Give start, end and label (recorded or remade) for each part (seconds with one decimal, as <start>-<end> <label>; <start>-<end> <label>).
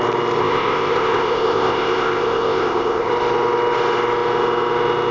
0.0-0.4 recorded; 0.4-3.1 remade; 3.1-5.1 recorded